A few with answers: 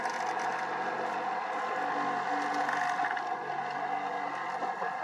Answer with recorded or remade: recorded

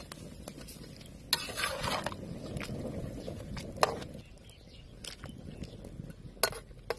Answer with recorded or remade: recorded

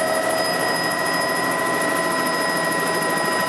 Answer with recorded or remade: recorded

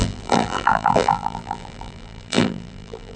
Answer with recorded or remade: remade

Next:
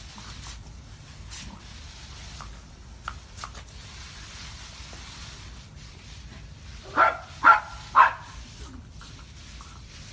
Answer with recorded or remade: recorded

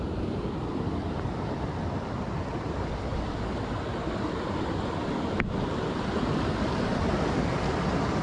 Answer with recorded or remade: remade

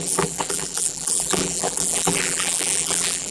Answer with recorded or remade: remade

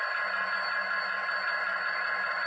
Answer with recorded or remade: recorded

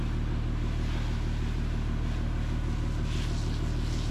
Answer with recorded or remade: recorded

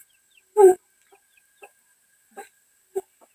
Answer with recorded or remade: remade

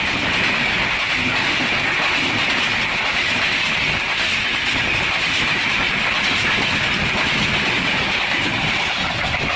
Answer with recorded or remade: recorded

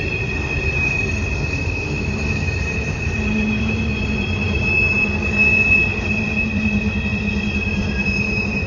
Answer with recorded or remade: remade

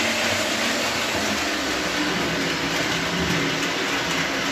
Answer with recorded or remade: recorded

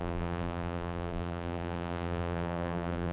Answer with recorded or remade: remade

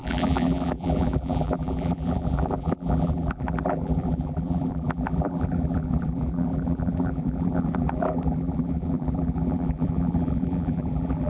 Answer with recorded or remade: remade